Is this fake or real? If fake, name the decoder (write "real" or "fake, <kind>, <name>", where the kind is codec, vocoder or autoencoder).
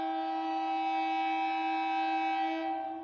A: real